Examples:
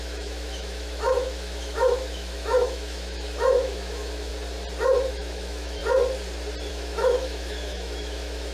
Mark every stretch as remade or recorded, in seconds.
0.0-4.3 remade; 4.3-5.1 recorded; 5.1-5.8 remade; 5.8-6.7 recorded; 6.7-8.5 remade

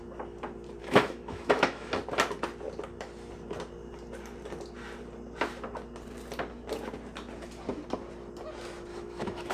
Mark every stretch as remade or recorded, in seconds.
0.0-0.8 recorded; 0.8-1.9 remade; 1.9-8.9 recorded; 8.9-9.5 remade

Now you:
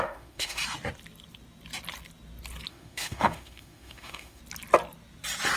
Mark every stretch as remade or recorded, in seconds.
0.0-0.6 remade; 0.6-2.7 recorded; 2.7-4.4 remade; 4.4-5.6 recorded

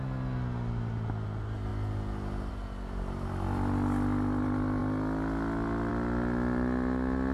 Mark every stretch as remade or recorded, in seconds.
0.0-7.3 recorded

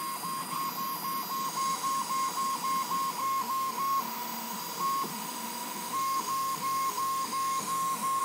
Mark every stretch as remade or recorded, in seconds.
0.0-3.2 recorded; 3.2-4.6 remade; 4.6-5.1 recorded; 5.1-8.2 remade

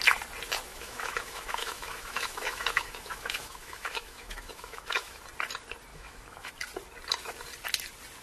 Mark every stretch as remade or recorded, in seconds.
0.0-0.7 recorded; 0.7-5.2 remade; 5.2-5.9 recorded; 5.9-6.5 remade; 6.5-8.2 recorded

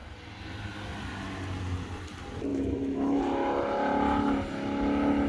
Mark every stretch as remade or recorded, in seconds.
0.0-2.5 recorded; 2.5-3.2 remade; 3.2-5.3 recorded